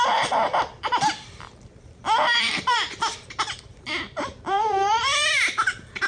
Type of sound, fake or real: fake